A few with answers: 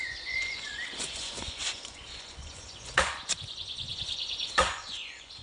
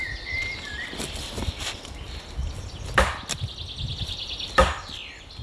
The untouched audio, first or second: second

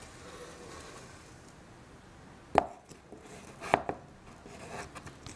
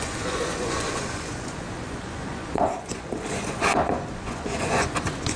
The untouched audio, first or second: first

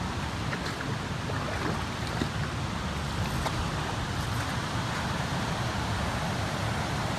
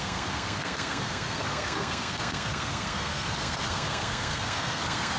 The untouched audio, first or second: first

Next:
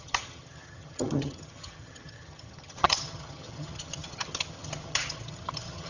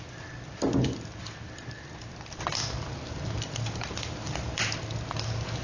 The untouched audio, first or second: second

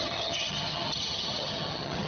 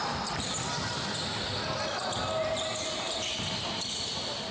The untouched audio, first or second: second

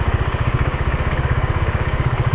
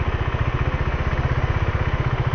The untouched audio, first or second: second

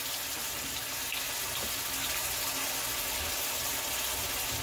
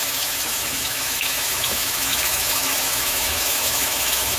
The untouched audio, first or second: first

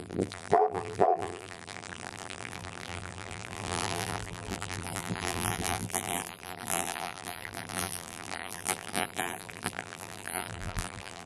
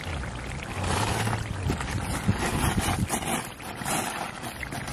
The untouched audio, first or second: second